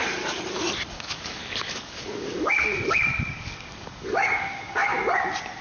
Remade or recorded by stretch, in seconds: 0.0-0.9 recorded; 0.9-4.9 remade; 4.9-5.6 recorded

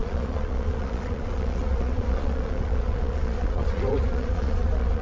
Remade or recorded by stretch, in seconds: 0.0-5.0 remade

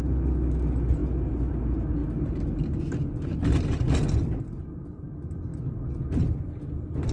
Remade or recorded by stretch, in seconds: 0.0-7.1 recorded

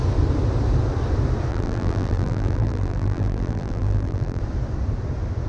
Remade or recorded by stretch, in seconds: 0.0-1.5 recorded; 1.5-4.4 remade; 4.4-5.5 recorded

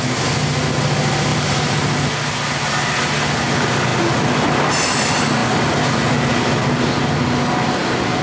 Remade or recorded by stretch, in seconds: 0.0-1.3 recorded; 1.3-2.1 remade; 2.1-5.4 recorded; 5.4-5.9 remade; 5.9-8.2 recorded

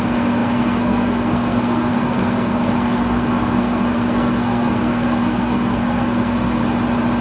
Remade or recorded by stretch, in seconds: 0.0-6.6 remade; 6.6-7.2 recorded

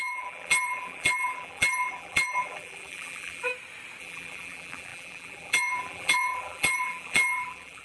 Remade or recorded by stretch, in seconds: 0.0-3.5 remade; 3.5-4.0 recorded; 4.0-7.8 remade